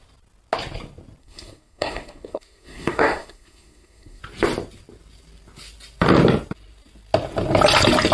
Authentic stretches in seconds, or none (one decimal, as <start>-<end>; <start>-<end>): 0.0-1.2; 4.2-8.1